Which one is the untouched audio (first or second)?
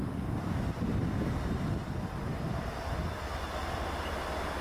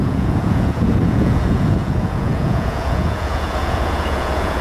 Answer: first